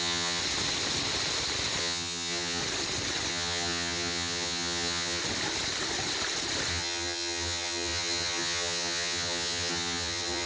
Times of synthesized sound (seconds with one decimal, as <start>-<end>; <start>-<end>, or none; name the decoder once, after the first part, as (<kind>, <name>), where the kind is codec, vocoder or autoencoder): 0.0-0.4 (vocoder, HiFi-GAN); 1.8-2.6; 3.3-5.2; 6.7-10.5